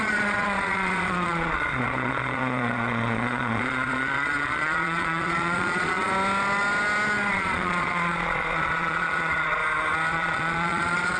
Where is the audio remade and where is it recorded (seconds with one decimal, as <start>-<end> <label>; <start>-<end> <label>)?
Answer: 0.0-6.1 remade; 6.1-7.3 recorded; 7.3-9.6 remade; 9.6-10.1 recorded; 10.1-11.2 remade